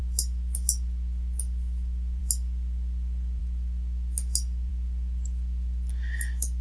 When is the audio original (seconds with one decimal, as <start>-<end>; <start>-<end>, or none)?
0.0-6.6